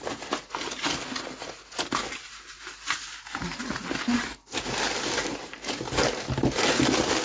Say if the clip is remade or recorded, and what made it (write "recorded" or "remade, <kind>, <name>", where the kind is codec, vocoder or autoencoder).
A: recorded